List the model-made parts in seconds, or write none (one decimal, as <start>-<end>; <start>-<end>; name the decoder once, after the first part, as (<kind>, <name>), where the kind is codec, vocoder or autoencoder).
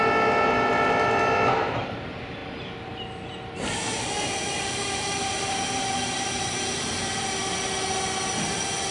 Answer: none